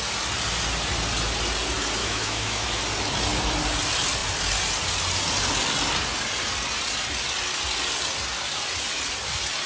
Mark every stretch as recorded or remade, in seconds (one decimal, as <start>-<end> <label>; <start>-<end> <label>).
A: 0.0-2.0 recorded; 2.0-2.8 remade; 2.8-9.7 recorded